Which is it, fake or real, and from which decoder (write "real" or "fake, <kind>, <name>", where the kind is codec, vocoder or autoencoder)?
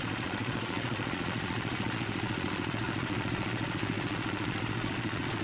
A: fake, vocoder, Vocos